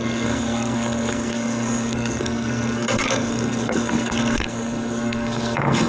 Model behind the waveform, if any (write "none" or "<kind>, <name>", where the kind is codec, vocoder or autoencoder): codec, SNAC